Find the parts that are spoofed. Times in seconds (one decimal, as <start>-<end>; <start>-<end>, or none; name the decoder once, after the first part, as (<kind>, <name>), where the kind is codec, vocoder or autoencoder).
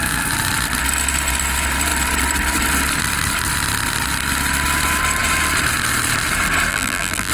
6.7-7.3 (vocoder, BigVGAN v2)